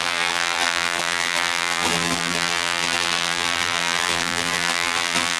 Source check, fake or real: fake